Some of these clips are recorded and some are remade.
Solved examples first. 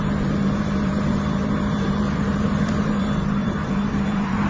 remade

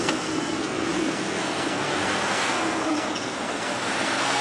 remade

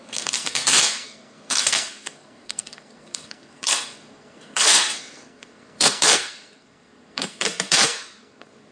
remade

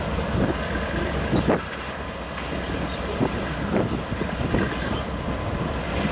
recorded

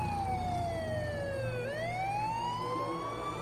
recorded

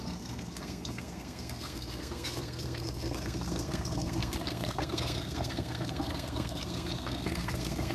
remade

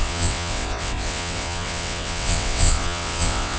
remade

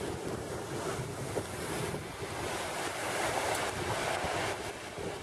recorded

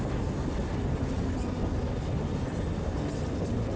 recorded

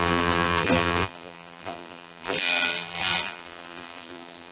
remade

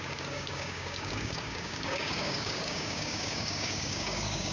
remade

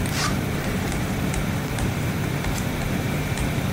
remade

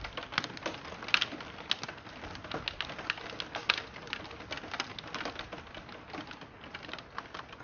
recorded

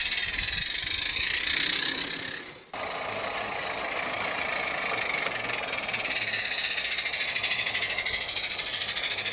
recorded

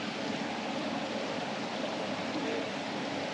recorded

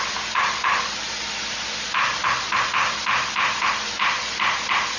recorded